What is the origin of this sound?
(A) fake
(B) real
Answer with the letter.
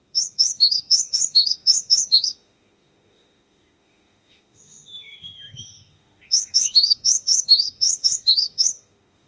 A